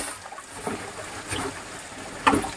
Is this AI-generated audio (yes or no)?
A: no